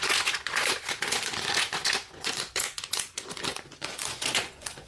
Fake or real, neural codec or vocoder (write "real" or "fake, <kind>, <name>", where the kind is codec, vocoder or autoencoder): fake, vocoder, Vocos